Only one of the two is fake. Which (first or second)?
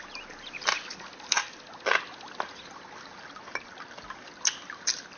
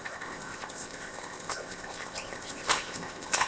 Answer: second